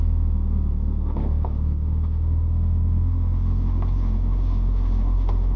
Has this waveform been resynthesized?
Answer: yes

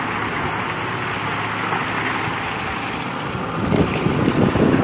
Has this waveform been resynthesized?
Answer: no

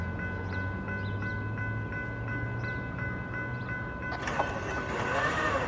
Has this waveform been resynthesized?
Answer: no